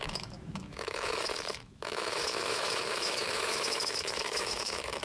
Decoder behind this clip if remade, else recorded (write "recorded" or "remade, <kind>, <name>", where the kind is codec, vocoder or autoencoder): remade, autoencoder, DAC-VAE